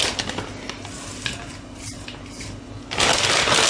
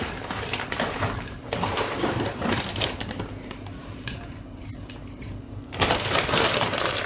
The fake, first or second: second